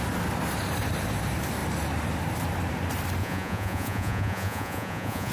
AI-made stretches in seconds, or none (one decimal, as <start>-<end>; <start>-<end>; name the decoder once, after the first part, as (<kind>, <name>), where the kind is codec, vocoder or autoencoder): 3.2-5.3 (vocoder, Vocos)